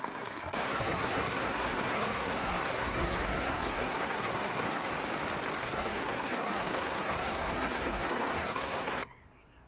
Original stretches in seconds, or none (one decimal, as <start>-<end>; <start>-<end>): 4.9-5.6